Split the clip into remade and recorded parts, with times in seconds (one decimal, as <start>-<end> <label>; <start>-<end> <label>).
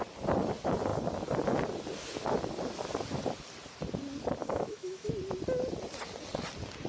0.0-4.4 recorded; 4.4-5.1 remade; 5.1-6.9 recorded